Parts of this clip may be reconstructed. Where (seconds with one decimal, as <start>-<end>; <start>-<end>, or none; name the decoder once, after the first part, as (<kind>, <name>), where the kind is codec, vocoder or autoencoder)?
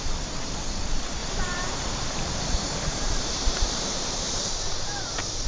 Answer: 1.2-4.5 (vocoder, BigVGAN v2)